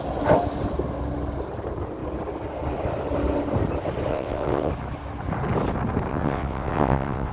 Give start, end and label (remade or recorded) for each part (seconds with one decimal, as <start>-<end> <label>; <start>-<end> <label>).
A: 0.0-4.1 recorded; 4.1-4.7 remade; 4.7-6.1 recorded; 6.1-7.3 remade